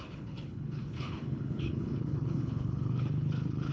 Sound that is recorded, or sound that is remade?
remade